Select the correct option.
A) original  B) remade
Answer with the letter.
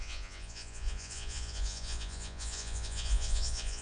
B